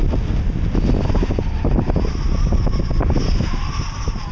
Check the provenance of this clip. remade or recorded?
recorded